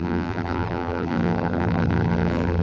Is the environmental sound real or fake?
fake